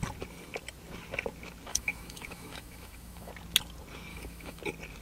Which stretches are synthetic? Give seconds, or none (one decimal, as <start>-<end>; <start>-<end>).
1.7-3.3; 4.1-4.6